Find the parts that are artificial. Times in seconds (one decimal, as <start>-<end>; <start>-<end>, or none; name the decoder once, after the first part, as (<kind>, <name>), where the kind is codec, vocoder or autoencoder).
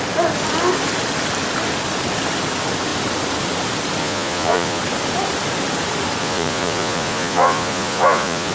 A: 4.0-4.8 (vocoder, Vocos); 6.2-8.5